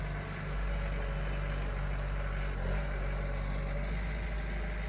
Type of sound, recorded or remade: recorded